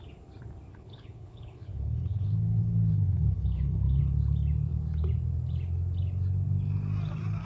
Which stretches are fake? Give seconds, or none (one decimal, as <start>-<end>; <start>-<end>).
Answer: 0.7-4.0